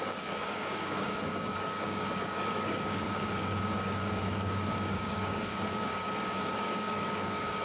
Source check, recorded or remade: remade